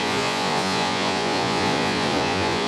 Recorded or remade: remade